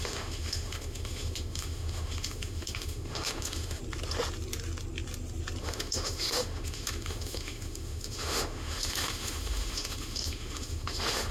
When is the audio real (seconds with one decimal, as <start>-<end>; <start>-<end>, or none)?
3.8-5.6